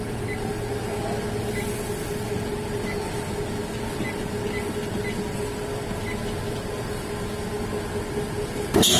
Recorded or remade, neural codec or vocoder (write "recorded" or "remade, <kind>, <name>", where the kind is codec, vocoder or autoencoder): recorded